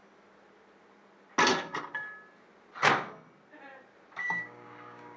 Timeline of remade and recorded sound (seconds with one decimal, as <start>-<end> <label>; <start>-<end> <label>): 0.0-4.2 recorded; 4.2-5.2 remade